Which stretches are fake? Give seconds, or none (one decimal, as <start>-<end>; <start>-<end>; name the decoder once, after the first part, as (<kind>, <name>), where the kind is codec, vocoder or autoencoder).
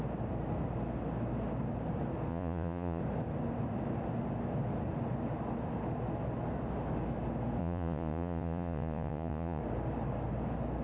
2.3-3.0 (vocoder, Vocos); 7.6-9.6